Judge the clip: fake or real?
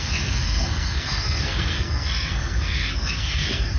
fake